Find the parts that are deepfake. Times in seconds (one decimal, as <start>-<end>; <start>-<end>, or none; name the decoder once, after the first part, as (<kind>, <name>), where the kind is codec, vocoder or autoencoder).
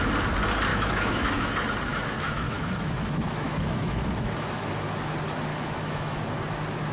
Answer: 0.7-1.5 (autoencoder, DAC-VAE); 1.9-4.7; 5.5-6.2